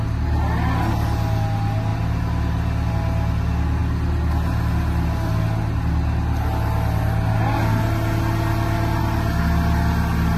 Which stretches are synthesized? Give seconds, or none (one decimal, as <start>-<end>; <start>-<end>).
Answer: none